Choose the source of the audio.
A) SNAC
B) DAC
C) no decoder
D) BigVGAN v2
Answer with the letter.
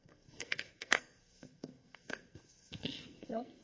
A